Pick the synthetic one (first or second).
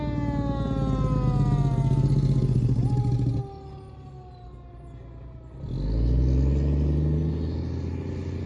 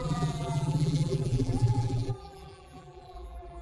second